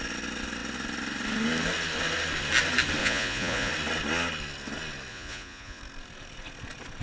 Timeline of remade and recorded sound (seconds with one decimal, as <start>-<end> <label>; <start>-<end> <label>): 0.0-3.0 recorded; 3.0-3.7 remade; 3.7-5.1 recorded; 5.1-5.8 remade; 5.8-7.0 recorded